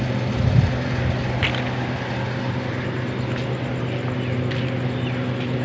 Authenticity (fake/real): real